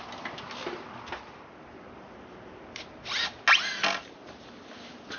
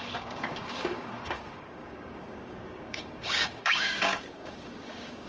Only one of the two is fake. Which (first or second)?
second